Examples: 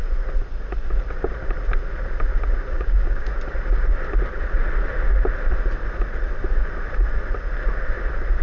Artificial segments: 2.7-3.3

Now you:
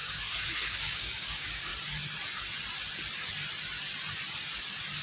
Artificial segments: 0.0-1.7

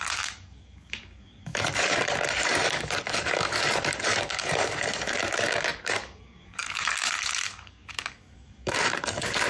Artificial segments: 0.0-9.5

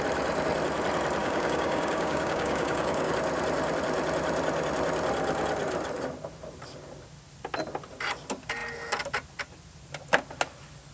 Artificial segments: 1.2-3.1

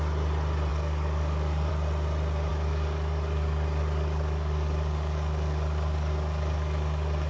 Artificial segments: 0.7-1.7; 2.5-7.3

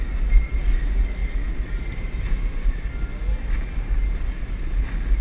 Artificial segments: none